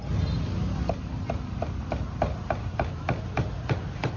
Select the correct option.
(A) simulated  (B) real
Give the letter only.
B